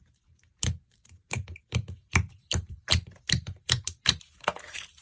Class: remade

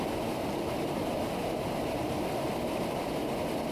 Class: recorded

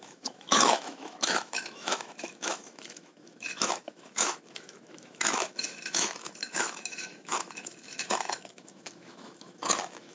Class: remade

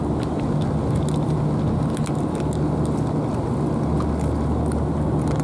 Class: recorded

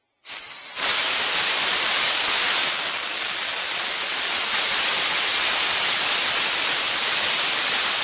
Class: recorded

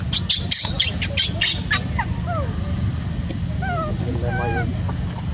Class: recorded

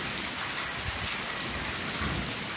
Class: recorded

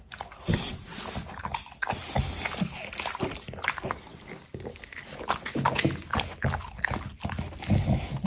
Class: recorded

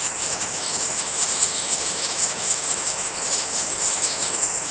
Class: remade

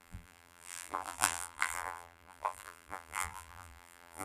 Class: remade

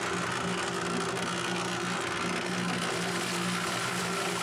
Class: recorded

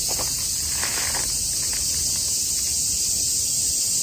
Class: recorded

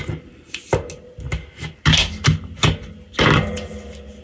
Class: recorded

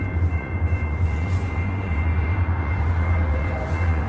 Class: remade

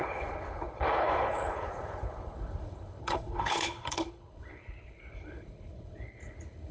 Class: remade